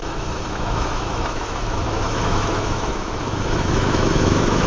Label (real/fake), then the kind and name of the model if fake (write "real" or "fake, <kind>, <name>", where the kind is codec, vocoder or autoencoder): fake, autoencoder, DAC-VAE